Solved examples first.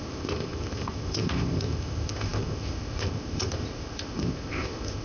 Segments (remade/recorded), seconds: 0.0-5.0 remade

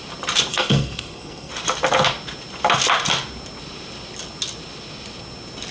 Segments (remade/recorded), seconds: 0.0-0.5 recorded; 0.5-1.5 remade; 1.5-5.7 recorded